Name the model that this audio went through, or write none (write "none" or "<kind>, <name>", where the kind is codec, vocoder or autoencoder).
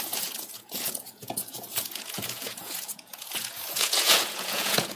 vocoder, Vocos